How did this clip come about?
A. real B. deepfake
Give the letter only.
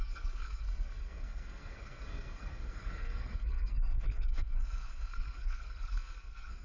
B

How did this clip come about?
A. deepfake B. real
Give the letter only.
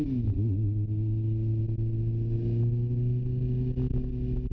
B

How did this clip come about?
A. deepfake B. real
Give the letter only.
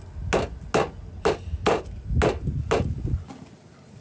B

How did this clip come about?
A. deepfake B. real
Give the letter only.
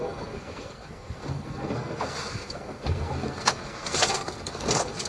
A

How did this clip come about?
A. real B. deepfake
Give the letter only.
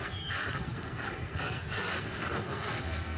B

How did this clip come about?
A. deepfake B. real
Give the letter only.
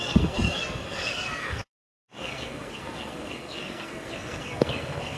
A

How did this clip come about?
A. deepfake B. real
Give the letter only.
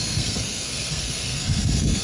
A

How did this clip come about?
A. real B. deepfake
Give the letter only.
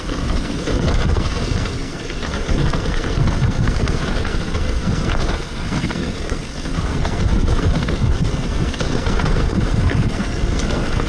B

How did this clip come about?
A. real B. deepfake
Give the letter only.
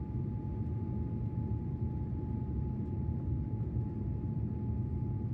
A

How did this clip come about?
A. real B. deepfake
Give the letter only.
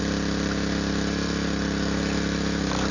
A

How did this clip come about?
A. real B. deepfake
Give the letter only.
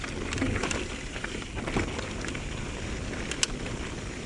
A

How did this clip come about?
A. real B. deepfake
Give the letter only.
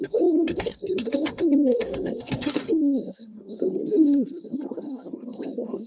B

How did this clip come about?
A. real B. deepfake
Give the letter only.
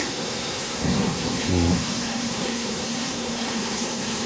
B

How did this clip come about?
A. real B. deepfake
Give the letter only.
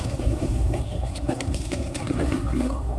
B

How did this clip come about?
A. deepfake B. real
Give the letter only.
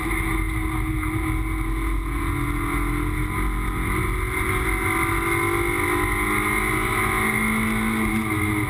B